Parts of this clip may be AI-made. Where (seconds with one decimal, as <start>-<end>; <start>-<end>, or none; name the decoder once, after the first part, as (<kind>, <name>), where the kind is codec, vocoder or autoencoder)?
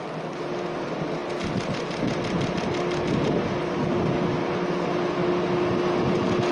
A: none